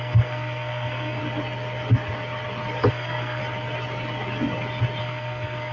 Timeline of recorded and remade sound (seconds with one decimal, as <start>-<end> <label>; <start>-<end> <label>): 0.0-1.2 remade; 1.2-2.9 recorded; 2.9-3.4 remade; 3.4-5.0 recorded; 5.0-5.7 remade